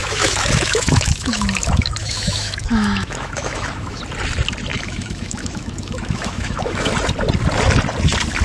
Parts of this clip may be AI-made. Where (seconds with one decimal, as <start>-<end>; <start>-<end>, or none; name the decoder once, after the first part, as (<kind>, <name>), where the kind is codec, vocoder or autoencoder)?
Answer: 0.0-4.0 (autoencoder, DAC-VAE); 4.7-6.9